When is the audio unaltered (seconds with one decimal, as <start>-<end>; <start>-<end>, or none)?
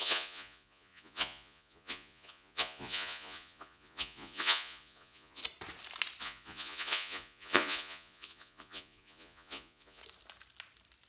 5.4-6.2; 10.0-11.1